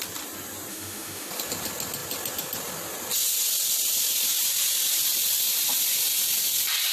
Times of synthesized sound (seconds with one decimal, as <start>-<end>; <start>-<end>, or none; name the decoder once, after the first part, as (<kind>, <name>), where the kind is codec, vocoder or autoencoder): 0.7-1.3 (autoencoder, DAC-VAE)